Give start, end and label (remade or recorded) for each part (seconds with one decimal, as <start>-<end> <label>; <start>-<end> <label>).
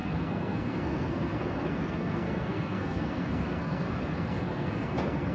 0.0-5.3 remade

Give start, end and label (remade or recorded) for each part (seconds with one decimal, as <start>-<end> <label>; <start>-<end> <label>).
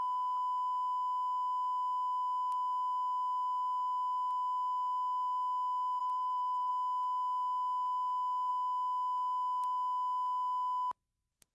0.0-6.0 recorded; 6.0-6.7 remade; 6.7-11.5 recorded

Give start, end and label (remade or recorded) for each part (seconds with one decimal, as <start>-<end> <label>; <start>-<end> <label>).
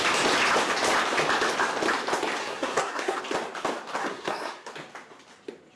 0.0-2.4 recorded; 2.4-3.2 remade; 3.2-4.0 recorded; 4.0-4.7 remade; 4.7-5.8 recorded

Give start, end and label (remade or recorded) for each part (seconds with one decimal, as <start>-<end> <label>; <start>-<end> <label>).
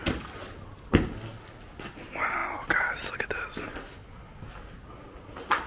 0.0-5.7 recorded